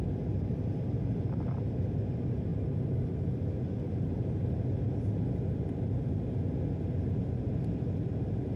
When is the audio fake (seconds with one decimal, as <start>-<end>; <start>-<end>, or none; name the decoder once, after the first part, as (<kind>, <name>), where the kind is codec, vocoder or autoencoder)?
none